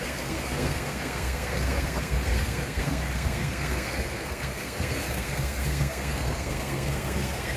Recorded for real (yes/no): no